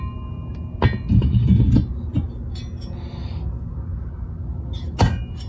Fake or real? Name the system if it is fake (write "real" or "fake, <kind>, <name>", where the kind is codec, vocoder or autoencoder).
real